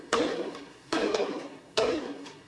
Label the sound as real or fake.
fake